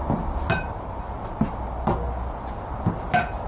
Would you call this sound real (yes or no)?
yes